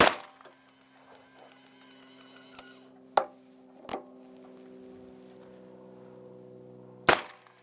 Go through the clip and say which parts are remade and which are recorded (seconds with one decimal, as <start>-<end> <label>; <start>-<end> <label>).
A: 0.0-7.6 recorded